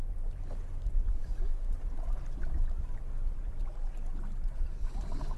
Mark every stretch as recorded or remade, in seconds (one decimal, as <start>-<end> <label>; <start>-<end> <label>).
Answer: 0.0-5.4 recorded